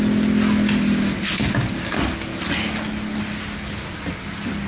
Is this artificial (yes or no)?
no